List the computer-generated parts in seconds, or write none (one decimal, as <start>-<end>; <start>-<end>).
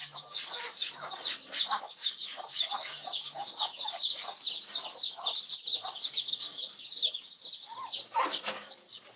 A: 0.0-4.2; 6.1-7.4; 8.5-9.2